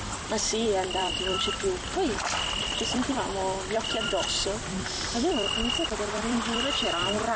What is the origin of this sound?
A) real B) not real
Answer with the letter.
B